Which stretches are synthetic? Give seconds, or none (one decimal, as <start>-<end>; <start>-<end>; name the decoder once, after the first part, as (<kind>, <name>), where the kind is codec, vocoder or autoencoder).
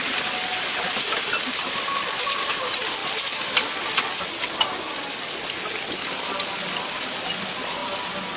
none